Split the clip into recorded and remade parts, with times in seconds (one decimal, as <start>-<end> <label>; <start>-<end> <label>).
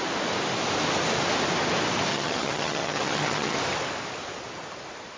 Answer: 0.0-2.1 recorded; 2.1-3.6 remade; 3.6-5.2 recorded